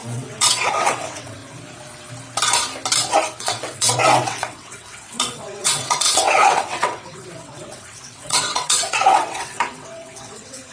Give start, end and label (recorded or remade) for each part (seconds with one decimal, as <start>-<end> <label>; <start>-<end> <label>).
0.0-1.4 remade; 1.4-3.4 recorded; 3.4-10.7 remade